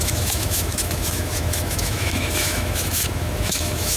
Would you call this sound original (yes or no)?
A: no